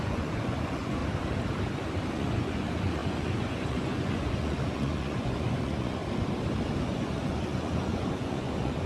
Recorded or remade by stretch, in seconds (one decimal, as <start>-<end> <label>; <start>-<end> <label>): 0.0-1.0 remade; 1.0-2.1 recorded; 2.1-6.0 remade; 6.0-6.8 recorded; 6.8-8.9 remade